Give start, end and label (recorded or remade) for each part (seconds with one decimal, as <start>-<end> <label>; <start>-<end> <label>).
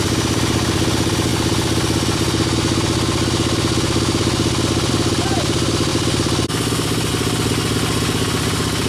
0.0-8.9 recorded